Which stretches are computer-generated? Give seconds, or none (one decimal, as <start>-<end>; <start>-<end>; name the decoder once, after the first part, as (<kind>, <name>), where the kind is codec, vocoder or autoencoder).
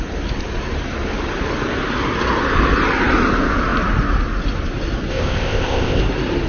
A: 5.1-6.0 (codec, ZipCodec)